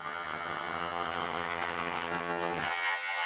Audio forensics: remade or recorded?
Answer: remade